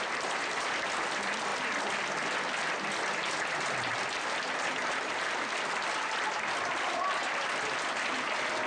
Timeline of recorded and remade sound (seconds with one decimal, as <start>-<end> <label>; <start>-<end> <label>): 0.0-1.5 remade; 1.5-4.7 recorded; 4.7-8.7 remade